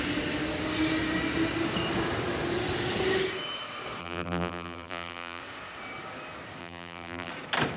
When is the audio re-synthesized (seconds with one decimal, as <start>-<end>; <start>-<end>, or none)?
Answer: 4.0-5.4; 6.6-7.3